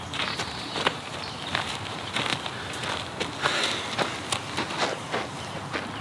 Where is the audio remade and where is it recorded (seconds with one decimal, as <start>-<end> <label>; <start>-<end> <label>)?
0.0-2.3 remade; 2.3-6.0 recorded